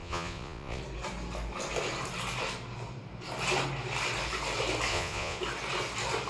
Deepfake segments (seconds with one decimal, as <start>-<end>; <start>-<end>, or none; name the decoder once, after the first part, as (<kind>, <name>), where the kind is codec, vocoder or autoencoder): 0.0-0.8 (vocoder, Vocos); 4.9-5.4